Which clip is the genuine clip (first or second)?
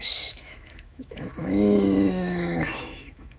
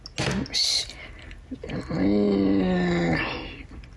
second